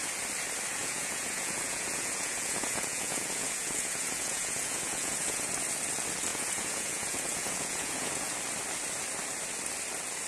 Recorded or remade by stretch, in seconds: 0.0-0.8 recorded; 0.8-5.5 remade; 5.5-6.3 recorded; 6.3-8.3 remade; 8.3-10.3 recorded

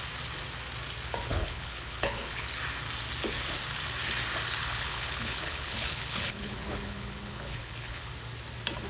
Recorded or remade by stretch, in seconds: 0.0-1.3 recorded; 1.3-2.6 remade; 2.6-4.6 recorded; 4.6-8.1 remade; 8.1-8.9 recorded

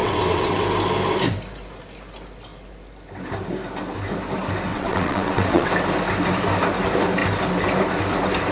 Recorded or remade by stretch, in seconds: 0.0-0.6 remade; 0.6-4.7 recorded; 4.7-5.7 remade; 5.7-8.5 recorded